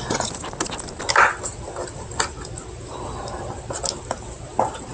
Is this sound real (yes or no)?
yes